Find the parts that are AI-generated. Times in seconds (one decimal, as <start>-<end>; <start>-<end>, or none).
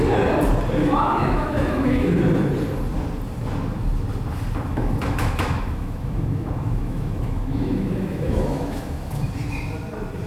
0.8-2.2; 4.7-9.3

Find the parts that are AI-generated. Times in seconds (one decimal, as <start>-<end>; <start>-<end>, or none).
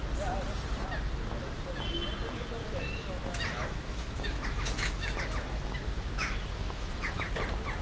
2.6-7.3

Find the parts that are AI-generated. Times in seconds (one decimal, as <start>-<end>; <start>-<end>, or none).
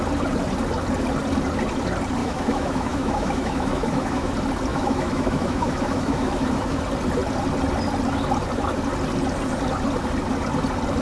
2.2-4.3; 4.7-6.8